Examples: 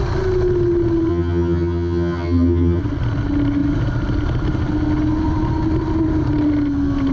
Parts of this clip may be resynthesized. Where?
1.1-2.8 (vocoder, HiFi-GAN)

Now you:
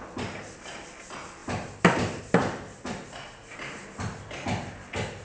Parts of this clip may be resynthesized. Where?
none

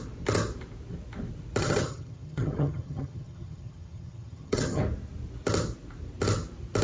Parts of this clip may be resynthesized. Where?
1.6-4.8 (vocoder, HiFi-GAN)

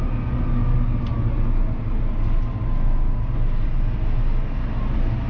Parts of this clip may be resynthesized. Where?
none